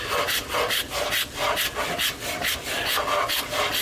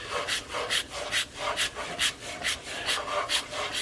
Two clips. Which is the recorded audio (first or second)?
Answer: first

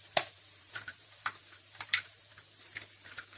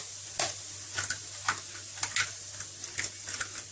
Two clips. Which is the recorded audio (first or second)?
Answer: second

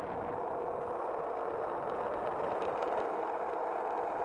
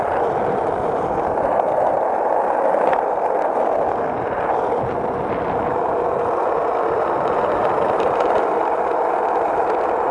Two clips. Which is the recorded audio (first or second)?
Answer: first